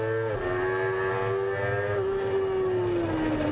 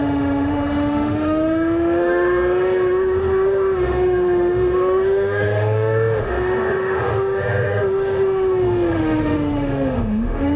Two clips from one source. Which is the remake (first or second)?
second